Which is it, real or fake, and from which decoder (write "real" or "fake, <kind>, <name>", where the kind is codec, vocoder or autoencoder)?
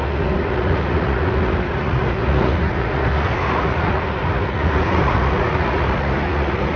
fake, vocoder, Vocos